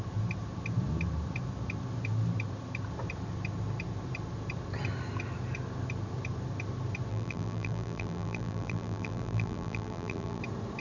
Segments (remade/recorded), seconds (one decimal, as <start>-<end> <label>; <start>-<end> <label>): 0.0-7.1 recorded; 7.1-10.4 remade; 10.4-10.8 recorded